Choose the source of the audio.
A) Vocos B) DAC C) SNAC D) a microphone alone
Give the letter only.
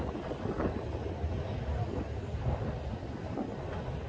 D